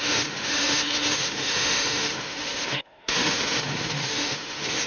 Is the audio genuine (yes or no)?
no